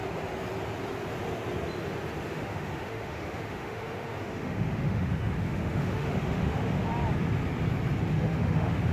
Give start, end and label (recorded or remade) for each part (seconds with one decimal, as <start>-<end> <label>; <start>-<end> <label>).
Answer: 0.0-2.3 recorded; 2.3-6.9 remade; 6.9-8.1 recorded; 8.1-8.9 remade